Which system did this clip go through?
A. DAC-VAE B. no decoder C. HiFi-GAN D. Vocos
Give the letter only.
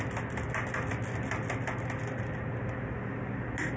B